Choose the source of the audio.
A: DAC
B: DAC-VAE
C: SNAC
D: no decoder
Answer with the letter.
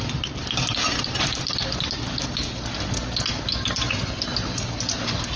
D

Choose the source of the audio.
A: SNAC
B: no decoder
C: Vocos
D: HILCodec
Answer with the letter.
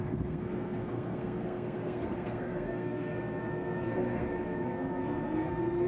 A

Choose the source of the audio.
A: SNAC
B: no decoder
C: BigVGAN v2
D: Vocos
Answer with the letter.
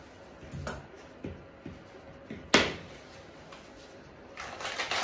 B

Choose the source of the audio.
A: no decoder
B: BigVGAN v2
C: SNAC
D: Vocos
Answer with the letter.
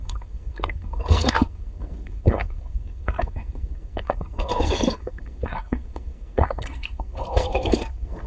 C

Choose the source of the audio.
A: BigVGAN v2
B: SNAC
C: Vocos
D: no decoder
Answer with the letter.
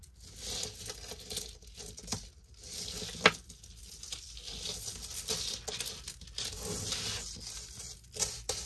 D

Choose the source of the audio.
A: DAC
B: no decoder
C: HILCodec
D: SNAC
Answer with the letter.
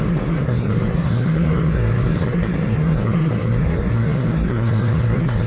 D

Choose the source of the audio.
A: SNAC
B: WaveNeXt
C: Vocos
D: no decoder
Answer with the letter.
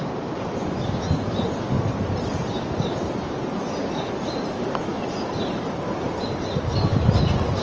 D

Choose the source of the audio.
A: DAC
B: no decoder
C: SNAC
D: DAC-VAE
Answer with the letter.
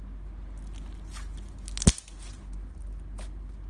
B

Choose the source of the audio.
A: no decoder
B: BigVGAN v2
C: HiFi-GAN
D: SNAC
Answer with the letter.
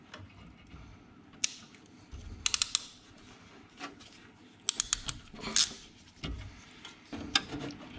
A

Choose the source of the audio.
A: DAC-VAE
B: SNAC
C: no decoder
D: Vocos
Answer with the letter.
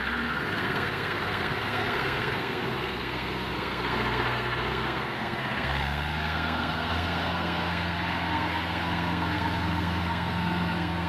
B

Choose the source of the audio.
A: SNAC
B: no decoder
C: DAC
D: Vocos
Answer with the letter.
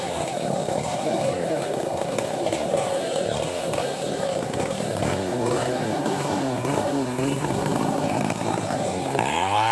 A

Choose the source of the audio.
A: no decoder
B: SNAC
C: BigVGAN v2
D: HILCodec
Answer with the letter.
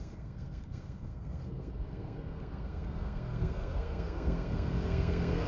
B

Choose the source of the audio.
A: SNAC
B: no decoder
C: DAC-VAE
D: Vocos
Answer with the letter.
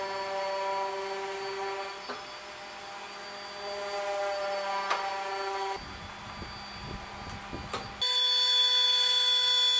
B